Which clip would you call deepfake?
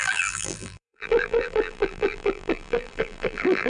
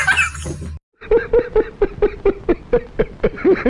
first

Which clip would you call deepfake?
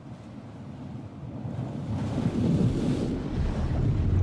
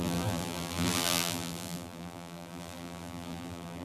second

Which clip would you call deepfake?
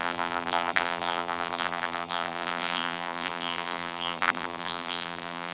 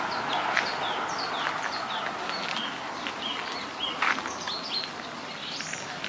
first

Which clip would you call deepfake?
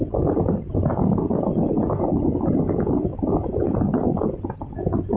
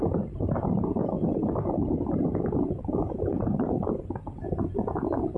second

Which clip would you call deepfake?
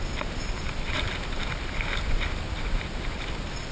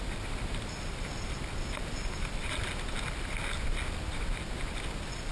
first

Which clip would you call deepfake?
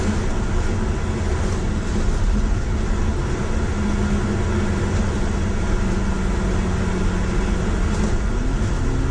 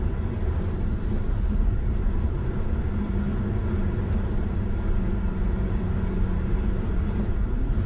second